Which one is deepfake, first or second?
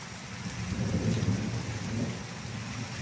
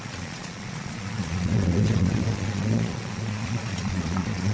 second